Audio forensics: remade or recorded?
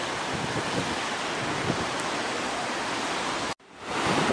recorded